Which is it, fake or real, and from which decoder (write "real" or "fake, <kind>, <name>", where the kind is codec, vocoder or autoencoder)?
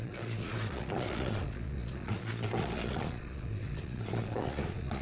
fake, vocoder, Vocos